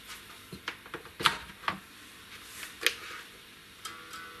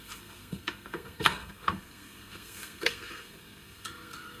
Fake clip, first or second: second